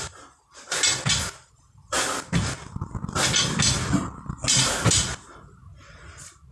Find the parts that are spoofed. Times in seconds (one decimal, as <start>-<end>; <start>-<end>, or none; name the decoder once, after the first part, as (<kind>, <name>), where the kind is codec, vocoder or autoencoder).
none